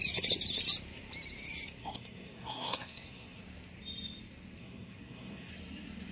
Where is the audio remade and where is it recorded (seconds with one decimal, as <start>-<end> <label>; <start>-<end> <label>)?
0.0-1.8 recorded; 1.8-3.4 remade; 3.4-4.6 recorded; 4.6-5.5 remade; 5.5-6.1 recorded